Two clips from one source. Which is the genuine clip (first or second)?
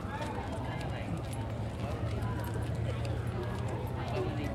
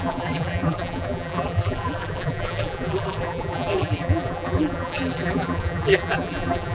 first